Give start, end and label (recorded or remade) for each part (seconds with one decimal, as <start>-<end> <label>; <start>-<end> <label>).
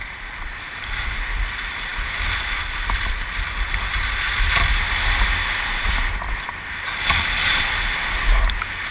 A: 0.0-1.9 remade; 1.9-6.5 recorded; 6.5-8.9 remade